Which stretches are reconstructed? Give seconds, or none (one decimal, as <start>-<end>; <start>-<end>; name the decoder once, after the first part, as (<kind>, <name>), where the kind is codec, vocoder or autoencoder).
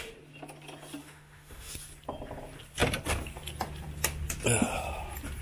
1.0-1.7 (autoencoder, DAC-VAE)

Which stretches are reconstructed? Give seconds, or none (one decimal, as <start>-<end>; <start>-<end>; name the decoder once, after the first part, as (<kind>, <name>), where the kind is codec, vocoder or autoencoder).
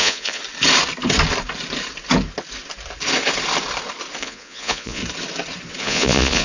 0.0-0.4 (vocoder, Vocos); 4.2-5.0; 5.8-6.4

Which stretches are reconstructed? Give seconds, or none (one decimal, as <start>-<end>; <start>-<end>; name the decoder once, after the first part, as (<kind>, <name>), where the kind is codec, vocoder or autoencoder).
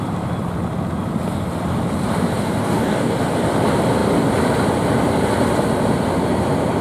2.6-3.2 (codec, DAC)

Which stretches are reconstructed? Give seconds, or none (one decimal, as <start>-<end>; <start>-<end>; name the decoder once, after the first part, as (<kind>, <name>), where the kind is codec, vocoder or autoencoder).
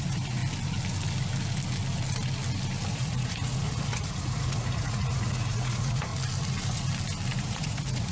0.0-0.4 (vocoder, Vocos); 2.9-6.1; 7.4-8.1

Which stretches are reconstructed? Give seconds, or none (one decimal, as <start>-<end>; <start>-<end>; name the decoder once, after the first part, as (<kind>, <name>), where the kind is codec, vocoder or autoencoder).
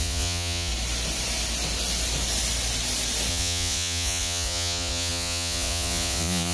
0.0-0.7 (vocoder, Vocos); 3.3-6.5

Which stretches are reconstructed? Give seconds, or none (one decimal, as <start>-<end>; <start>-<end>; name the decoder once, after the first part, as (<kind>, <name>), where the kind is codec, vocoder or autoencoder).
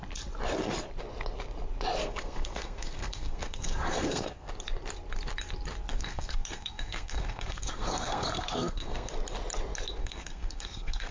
2.0-4.5 (codec, SNAC); 5.9-9.1; 10.0-11.1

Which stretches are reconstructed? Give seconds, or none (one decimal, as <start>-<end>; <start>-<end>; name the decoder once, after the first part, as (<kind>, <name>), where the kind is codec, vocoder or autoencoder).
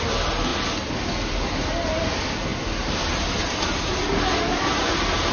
none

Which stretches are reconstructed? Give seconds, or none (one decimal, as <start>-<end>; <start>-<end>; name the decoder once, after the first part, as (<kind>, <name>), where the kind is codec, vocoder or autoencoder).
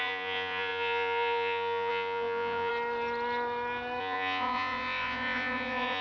0.0-2.7 (vocoder, Vocos); 4.0-6.0